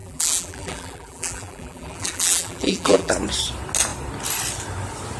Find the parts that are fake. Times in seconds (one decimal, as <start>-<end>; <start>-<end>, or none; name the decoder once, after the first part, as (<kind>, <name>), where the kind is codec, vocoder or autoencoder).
0.0-3.1 (vocoder, BigVGAN v2)